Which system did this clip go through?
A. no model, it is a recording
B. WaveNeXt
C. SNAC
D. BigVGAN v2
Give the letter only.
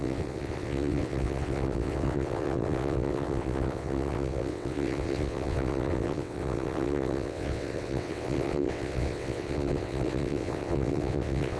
B